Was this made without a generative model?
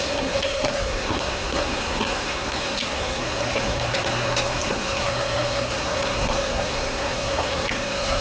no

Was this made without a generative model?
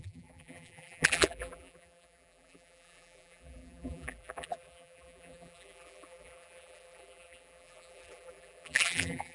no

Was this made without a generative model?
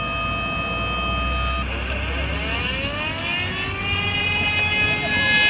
yes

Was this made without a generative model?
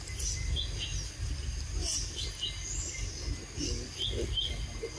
yes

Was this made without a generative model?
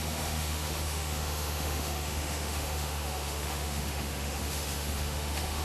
no